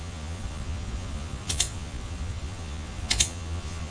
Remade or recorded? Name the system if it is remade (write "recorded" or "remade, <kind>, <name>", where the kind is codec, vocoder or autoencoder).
remade, vocoder, Vocos